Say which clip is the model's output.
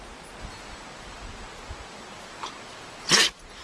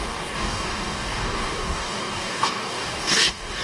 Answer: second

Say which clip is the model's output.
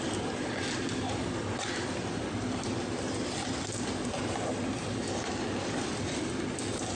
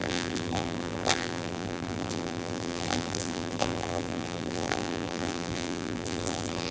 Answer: second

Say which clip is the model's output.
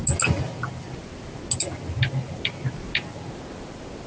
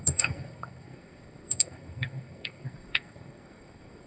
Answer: second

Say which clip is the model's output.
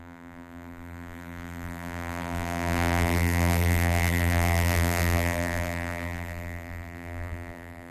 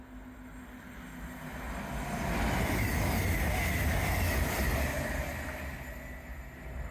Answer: first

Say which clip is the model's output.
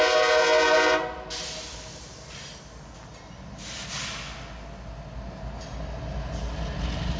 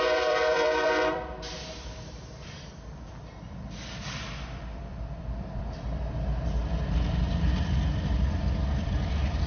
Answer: second